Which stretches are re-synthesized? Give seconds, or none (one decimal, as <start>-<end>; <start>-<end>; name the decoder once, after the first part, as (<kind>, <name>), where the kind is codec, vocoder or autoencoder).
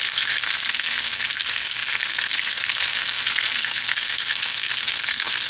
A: 0.0-5.5 (codec, SNAC)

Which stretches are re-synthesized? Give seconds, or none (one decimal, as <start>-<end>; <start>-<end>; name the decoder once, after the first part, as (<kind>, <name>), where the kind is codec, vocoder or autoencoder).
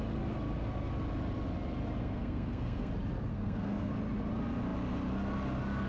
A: 2.0-2.9 (codec, SNAC); 3.3-3.9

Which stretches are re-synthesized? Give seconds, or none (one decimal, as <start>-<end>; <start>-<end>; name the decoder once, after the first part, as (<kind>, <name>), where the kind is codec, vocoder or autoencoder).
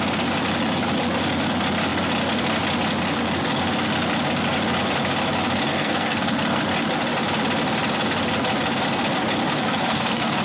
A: 5.7-6.6 (codec, SNAC); 9.4-10.4